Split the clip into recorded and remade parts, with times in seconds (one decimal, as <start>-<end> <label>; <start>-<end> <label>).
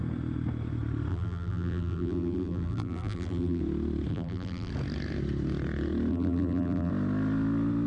0.0-1.1 recorded; 1.1-3.6 remade; 3.6-4.1 recorded; 4.1-4.7 remade; 4.7-6.1 recorded; 6.1-6.9 remade; 6.9-7.9 recorded